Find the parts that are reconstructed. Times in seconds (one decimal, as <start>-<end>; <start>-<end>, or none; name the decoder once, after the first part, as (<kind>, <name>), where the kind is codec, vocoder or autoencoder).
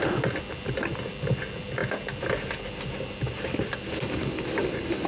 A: 1.8-2.3 (vocoder, BigVGAN v2)